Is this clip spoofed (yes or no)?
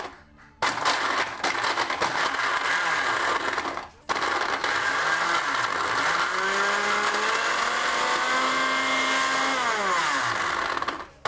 no